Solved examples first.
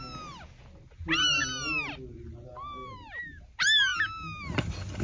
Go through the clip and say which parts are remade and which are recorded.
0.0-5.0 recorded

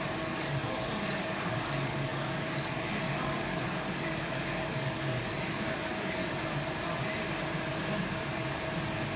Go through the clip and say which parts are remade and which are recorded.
0.0-6.2 remade; 6.2-8.0 recorded; 8.0-8.4 remade; 8.4-9.2 recorded